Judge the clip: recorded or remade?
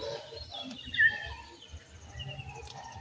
recorded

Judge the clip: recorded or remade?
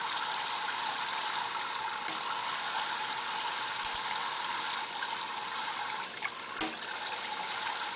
recorded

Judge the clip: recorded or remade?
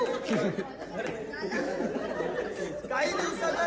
recorded